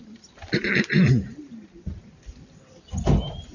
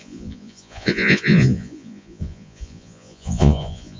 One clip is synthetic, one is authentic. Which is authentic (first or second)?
first